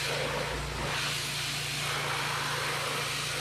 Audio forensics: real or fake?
real